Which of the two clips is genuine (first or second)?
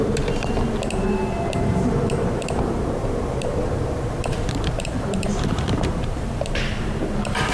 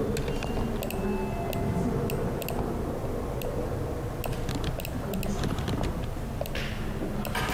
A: second